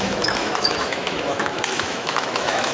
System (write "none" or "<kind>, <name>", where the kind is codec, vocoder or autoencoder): autoencoder, DAC-VAE